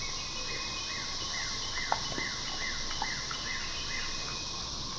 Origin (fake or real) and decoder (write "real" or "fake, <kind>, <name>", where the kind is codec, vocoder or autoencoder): real